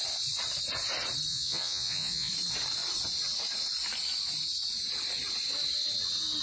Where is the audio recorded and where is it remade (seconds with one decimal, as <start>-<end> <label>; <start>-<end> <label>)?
0.0-1.3 recorded; 1.3-2.3 remade; 2.3-6.4 recorded